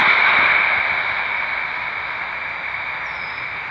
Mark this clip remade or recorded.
recorded